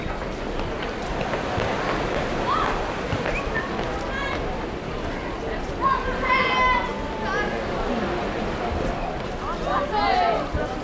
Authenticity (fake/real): real